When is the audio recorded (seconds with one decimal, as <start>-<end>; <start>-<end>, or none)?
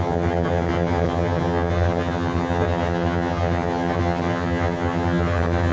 none